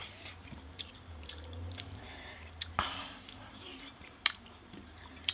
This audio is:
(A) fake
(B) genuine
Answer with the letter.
A